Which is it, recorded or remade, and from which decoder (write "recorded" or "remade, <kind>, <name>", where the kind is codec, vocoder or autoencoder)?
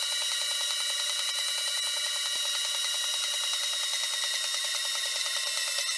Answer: recorded